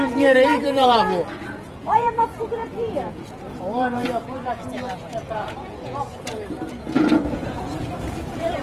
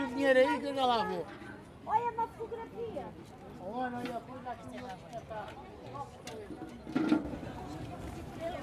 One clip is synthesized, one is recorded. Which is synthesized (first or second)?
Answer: first